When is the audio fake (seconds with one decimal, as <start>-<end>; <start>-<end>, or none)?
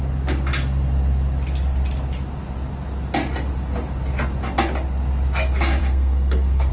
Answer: 5.8-6.7